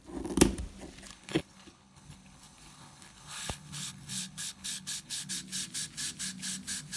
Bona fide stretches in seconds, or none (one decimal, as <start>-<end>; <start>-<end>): 0.0-1.1; 5.3-7.0